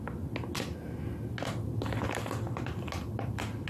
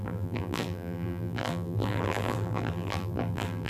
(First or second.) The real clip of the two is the first